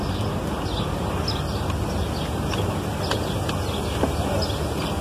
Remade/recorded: recorded